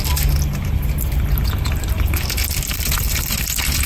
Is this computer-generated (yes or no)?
no